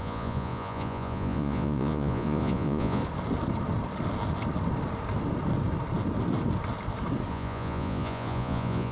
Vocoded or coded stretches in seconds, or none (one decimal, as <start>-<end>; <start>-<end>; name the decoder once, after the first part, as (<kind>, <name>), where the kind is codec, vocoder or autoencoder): 0.0-3.0 (vocoder, Vocos); 7.3-8.9

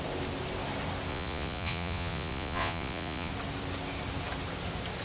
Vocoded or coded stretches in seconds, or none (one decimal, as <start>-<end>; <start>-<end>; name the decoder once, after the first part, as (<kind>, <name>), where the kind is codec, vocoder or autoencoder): 1.1-3.3 (vocoder, Vocos)

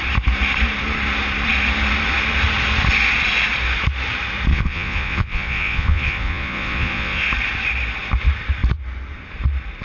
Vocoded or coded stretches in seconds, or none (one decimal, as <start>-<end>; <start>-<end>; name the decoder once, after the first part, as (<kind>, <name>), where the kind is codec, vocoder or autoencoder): 4.5-7.2 (vocoder, Vocos)

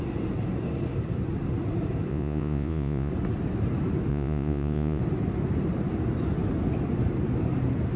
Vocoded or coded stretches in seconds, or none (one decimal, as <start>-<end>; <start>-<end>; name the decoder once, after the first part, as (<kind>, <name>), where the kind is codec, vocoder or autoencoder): 2.1-3.1 (vocoder, Vocos); 4.1-5.0

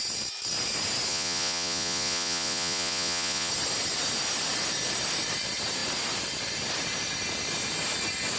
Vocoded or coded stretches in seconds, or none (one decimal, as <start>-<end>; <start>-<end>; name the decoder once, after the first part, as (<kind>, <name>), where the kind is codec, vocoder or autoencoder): 1.1-3.5 (vocoder, Vocos)

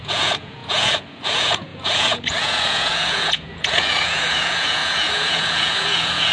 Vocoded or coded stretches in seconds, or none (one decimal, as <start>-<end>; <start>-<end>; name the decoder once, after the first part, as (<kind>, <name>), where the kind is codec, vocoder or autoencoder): 0.0-6.3 (vocoder, Vocos)